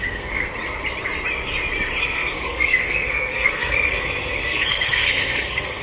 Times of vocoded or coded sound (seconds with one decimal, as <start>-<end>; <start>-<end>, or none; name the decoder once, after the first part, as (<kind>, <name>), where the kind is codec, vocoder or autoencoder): 0.0-0.5 (codec, SNAC); 2.0-5.8